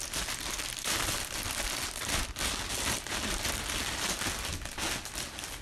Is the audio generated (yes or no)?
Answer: no